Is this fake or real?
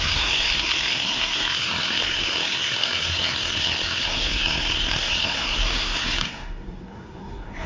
fake